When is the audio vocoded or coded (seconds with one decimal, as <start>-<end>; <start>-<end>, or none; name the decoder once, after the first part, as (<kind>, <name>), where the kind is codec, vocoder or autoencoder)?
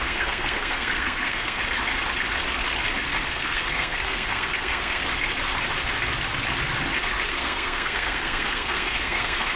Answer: 0.0-1.6 (codec, SNAC); 3.0-5.0; 7.3-9.6